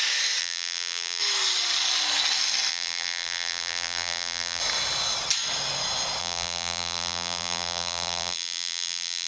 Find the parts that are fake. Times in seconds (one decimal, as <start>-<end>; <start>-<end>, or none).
0.4-1.2; 2.7-4.6; 6.2-9.3